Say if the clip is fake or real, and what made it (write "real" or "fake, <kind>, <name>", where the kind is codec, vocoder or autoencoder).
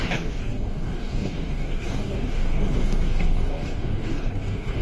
fake, codec, DAC